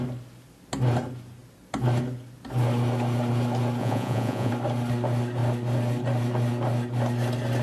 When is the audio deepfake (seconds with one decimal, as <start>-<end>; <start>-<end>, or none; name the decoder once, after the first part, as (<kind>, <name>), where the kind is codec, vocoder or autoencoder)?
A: 3.8-4.5 (vocoder, Vocos)